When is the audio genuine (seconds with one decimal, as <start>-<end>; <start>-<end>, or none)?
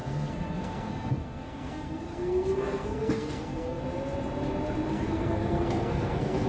3.8-4.9